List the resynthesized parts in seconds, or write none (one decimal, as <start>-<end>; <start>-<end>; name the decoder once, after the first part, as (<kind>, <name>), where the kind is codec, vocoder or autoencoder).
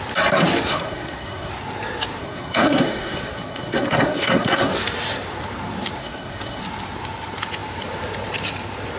0.7-1.5 (codec, SNAC); 2.2-4.7; 6.0-6.6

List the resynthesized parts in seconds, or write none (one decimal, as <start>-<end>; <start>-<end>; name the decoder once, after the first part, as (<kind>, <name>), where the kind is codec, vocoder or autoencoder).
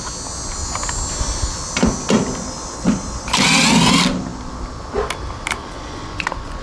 5.6-6.6 (vocoder, Vocos)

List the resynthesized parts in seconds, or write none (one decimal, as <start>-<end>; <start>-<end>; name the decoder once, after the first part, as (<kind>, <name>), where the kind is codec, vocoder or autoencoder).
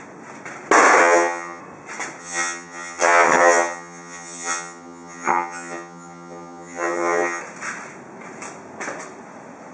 1.0-1.6 (vocoder, HiFi-GAN); 2.2-7.4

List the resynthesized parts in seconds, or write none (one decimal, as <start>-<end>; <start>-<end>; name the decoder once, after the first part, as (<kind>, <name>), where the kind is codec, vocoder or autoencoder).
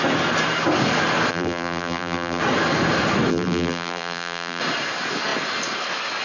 1.3-2.4 (vocoder, BigVGAN v2); 3.3-4.6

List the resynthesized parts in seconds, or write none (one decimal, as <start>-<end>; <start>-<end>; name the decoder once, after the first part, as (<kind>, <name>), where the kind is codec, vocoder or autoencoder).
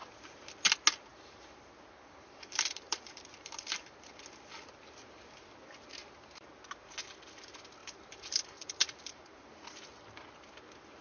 1.1-4.2 (vocoder, BigVGAN v2); 7.8-9.7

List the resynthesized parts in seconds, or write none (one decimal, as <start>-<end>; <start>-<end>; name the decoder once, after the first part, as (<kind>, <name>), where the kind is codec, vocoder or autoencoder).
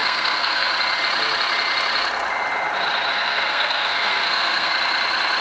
0.0-0.7 (codec, SNAC); 3.1-4.7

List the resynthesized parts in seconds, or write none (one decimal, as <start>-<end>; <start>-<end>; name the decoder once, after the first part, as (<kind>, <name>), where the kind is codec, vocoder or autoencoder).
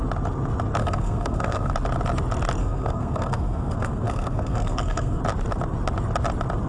0.8-1.7 (codec, SNAC); 2.6-5.2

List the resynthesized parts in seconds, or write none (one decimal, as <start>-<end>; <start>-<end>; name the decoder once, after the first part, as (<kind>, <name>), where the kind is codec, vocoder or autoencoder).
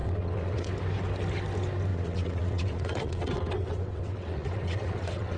0.0-0.7 (vocoder, WaveNeXt); 1.9-5.4